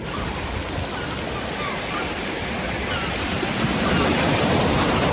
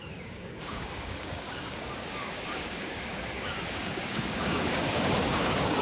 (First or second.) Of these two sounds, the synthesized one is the second